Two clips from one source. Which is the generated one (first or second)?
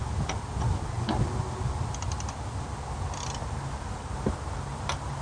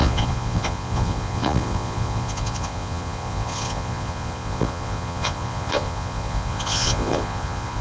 second